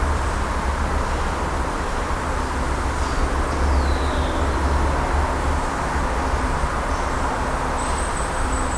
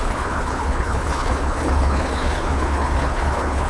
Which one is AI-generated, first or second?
second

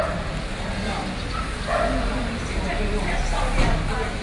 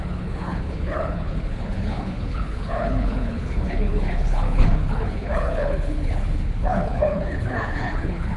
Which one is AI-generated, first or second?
second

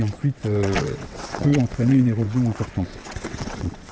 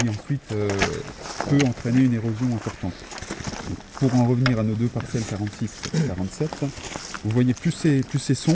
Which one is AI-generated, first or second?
first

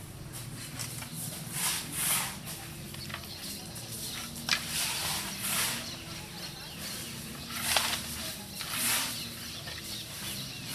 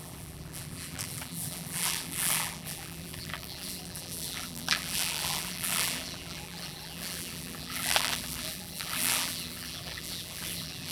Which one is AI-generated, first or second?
second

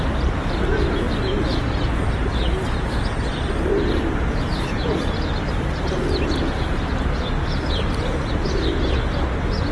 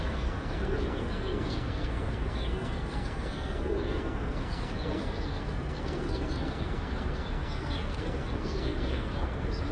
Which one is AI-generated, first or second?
second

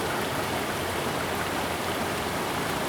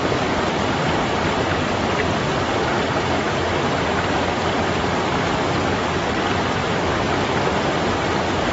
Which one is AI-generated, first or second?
second